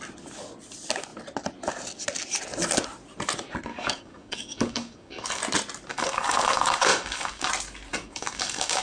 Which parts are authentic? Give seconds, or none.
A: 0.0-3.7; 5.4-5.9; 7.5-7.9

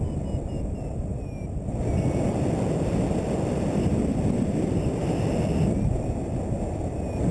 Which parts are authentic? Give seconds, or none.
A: 0.0-7.3

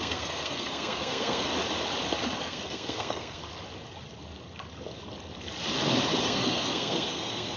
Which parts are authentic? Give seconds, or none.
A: 1.5-2.4; 3.4-6.2

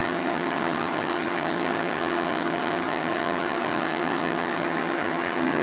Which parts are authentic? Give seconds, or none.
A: none

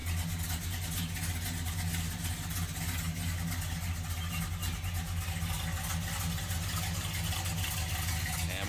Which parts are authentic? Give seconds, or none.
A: 0.0-8.7

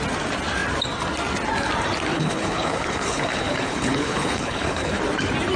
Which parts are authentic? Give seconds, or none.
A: 0.0-2.1; 5.0-5.6

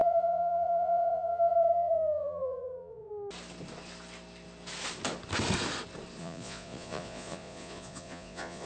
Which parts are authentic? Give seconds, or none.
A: 3.1-6.2